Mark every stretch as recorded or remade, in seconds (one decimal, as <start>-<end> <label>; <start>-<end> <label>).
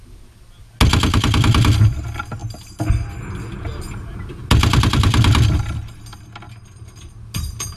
0.0-7.8 recorded